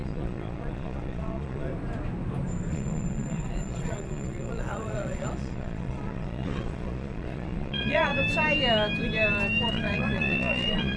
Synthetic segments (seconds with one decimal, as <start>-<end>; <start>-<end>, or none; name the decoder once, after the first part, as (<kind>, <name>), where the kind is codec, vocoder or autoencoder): 0.0-1.7 (vocoder, Vocos); 2.7-8.1; 9.7-11.0